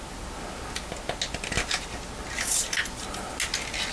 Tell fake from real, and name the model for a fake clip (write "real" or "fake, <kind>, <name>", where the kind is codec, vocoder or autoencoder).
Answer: real